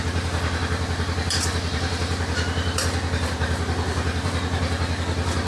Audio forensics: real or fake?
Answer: fake